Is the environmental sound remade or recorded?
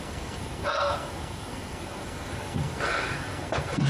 remade